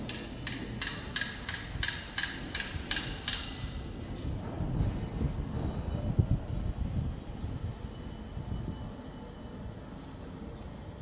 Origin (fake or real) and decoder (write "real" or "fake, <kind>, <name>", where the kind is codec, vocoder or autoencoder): real